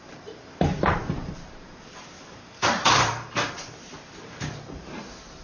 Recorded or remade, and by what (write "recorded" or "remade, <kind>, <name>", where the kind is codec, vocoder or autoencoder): remade, vocoder, BigVGAN v2